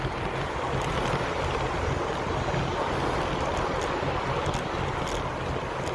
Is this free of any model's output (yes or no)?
yes